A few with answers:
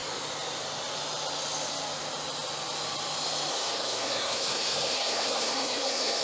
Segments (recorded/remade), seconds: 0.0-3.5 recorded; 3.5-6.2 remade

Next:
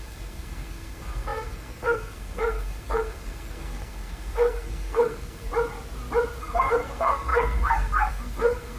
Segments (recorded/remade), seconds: 0.0-5.5 remade; 5.5-6.4 recorded; 6.4-8.8 remade

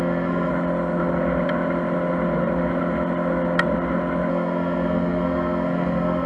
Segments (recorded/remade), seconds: 0.0-0.5 remade; 0.5-4.3 recorded; 4.3-6.3 remade

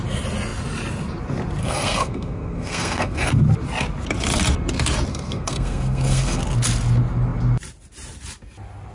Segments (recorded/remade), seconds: 0.0-1.6 recorded; 1.6-3.3 remade; 3.3-5.1 recorded; 5.1-6.4 remade; 6.4-8.9 recorded

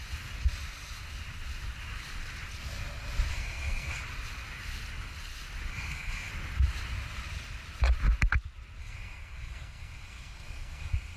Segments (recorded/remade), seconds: 0.0-3.3 recorded; 3.3-4.0 remade; 4.0-5.7 recorded; 5.7-6.3 remade; 6.3-8.8 recorded; 8.8-11.2 remade